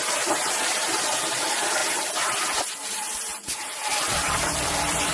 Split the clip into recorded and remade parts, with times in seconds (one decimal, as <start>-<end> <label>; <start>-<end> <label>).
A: 0.0-1.8 remade; 1.8-2.8 recorded; 2.8-5.1 remade